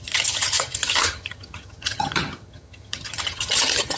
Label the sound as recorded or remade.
remade